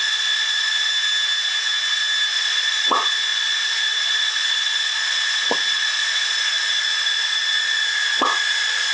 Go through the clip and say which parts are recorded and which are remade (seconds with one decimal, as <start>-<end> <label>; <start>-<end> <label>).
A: 0.0-0.9 remade; 0.9-2.3 recorded; 2.3-8.9 remade